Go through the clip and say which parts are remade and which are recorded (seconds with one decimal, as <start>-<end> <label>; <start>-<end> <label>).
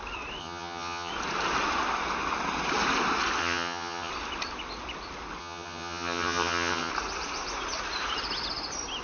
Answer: 0.0-0.4 recorded; 0.4-1.1 remade; 1.1-3.4 recorded; 3.4-4.1 remade; 4.1-5.4 recorded; 5.4-6.9 remade; 6.9-9.0 recorded